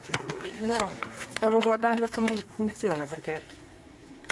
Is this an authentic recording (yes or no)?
no